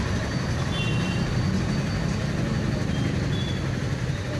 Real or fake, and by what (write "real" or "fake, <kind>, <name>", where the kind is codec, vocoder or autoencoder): real